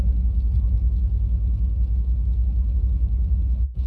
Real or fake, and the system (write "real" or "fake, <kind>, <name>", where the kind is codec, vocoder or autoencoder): real